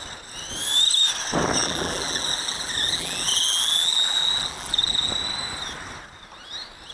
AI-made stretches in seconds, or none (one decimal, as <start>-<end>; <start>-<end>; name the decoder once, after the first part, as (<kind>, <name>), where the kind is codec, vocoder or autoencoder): 1.6-5.1 (vocoder, BigVGAN v2)